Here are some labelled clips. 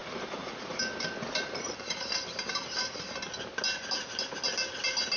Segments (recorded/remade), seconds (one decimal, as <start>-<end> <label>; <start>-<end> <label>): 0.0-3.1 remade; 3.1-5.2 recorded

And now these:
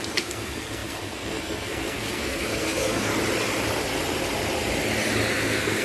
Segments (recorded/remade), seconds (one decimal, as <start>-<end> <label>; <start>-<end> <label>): 0.0-3.1 remade; 3.1-5.3 recorded; 5.3-5.8 remade

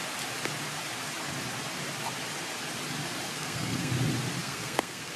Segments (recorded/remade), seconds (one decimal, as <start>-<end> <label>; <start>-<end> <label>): 0.0-3.3 recorded; 3.3-3.9 remade; 3.9-4.4 recorded; 4.4-5.2 remade

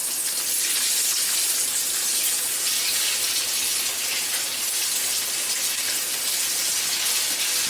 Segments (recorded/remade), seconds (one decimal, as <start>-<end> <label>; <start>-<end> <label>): 0.0-4.6 remade; 4.6-7.7 recorded

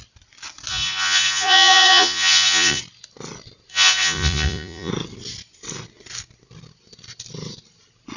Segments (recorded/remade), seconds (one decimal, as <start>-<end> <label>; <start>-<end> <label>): 0.0-0.7 recorded; 0.7-2.8 remade; 2.8-3.7 recorded; 3.7-4.9 remade; 4.9-8.2 recorded

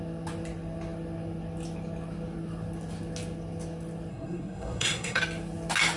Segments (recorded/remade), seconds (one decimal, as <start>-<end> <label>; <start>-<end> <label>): 0.0-4.1 recorded; 4.1-5.2 remade; 5.2-6.0 recorded